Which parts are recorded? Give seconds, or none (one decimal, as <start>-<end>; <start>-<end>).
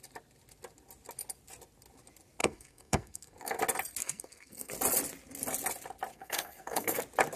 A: 0.0-2.4; 3.6-4.0; 4.7-6.1; 7.0-7.4